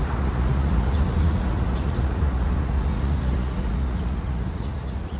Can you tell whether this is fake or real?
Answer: fake